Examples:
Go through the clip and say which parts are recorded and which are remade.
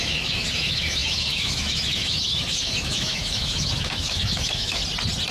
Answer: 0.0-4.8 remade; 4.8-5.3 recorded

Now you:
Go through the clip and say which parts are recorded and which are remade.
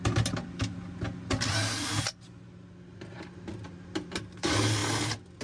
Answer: 0.0-5.4 recorded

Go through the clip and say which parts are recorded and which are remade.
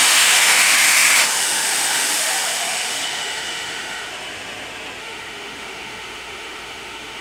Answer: 0.0-4.1 remade; 4.1-5.0 recorded; 5.0-7.2 remade